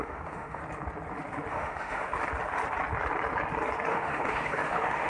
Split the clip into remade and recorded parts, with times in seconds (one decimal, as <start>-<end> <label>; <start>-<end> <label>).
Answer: 0.0-0.6 remade; 0.6-1.5 recorded; 1.5-2.1 remade; 2.1-3.9 recorded; 3.9-5.1 remade

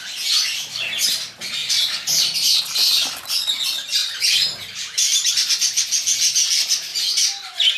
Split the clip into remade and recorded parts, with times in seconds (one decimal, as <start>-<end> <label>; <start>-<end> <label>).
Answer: 0.0-1.6 recorded; 1.6-2.6 remade; 2.6-4.0 recorded; 4.0-5.3 remade; 5.3-6.9 recorded; 6.9-7.8 remade

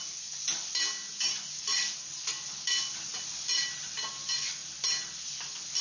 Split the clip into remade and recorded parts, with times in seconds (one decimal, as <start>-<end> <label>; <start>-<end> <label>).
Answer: 0.0-5.8 recorded

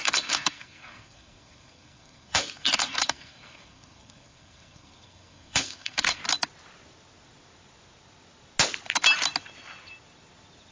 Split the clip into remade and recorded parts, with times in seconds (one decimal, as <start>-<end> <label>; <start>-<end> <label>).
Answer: 0.0-6.2 remade; 6.2-10.7 recorded

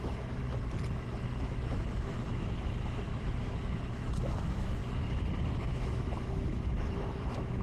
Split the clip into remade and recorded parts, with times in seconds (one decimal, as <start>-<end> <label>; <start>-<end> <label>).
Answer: 0.0-0.4 remade; 0.4-1.4 recorded; 1.4-4.8 remade; 4.8-5.6 recorded; 5.6-7.6 remade

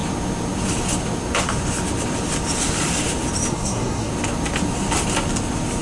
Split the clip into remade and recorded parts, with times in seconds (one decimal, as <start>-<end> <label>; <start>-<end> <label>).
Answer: 0.0-3.5 recorded; 3.5-4.1 remade; 4.1-5.8 recorded

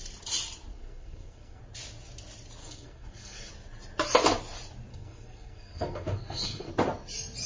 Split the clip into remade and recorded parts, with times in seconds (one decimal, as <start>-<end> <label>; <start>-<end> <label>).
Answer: 0.0-0.7 recorded; 0.7-1.6 remade; 1.6-2.6 recorded; 2.6-3.5 remade; 3.5-4.9 recorded; 4.9-6.7 remade; 6.7-7.5 recorded